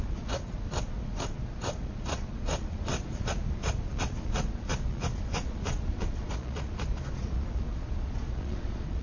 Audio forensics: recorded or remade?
remade